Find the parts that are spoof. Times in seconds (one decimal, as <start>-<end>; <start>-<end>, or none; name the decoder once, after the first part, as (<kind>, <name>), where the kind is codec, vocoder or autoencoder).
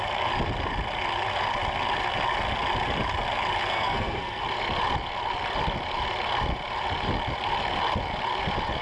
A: 3.7-4.4 (codec, SNAC)